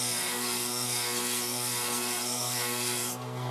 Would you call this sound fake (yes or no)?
yes